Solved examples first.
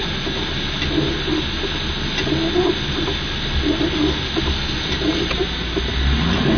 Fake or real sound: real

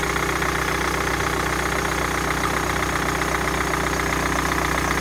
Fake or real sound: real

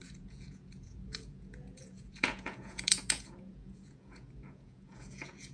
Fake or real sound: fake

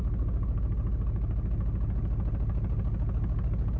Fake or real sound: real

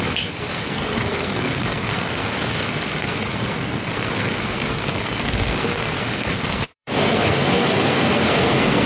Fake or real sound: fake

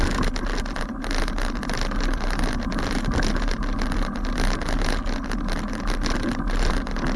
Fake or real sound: real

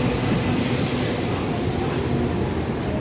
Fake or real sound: real